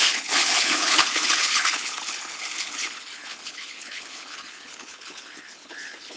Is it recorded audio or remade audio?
remade